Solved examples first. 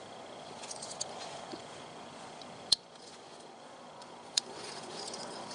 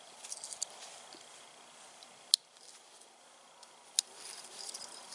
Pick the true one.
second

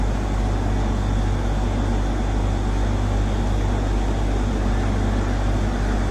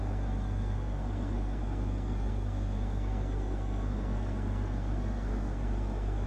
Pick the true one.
first